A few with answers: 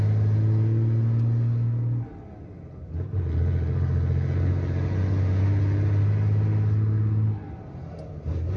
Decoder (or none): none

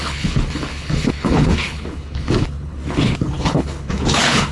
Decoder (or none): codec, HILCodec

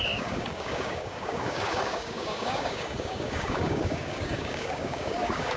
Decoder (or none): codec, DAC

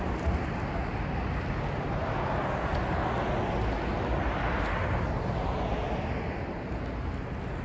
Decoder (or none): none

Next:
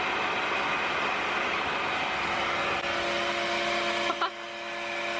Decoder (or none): none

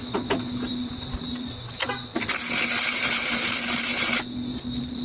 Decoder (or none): none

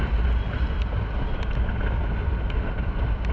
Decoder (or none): none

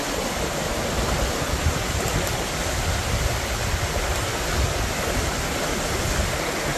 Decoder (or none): none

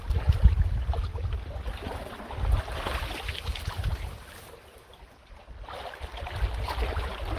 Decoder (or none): none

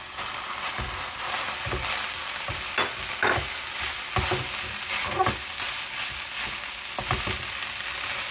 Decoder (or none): none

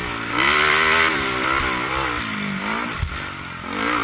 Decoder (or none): none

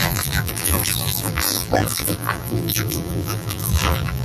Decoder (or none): vocoder, BigVGAN v2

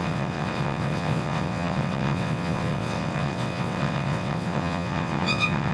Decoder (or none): vocoder, WaveNeXt